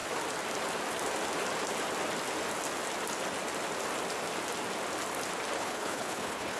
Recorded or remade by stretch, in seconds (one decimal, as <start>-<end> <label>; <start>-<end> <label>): 0.0-5.6 recorded; 5.6-6.6 remade